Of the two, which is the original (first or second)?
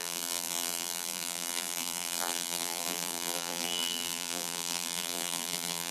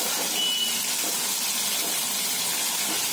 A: second